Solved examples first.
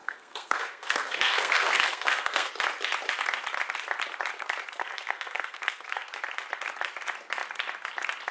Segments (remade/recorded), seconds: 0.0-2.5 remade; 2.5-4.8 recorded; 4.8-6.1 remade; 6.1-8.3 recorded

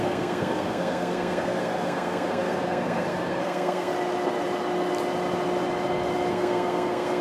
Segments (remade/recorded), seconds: 0.0-3.9 remade; 3.9-6.3 recorded; 6.3-7.2 remade